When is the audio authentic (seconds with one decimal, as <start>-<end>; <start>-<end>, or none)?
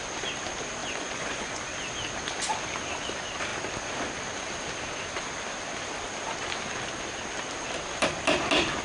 0.0-0.8; 1.6-8.8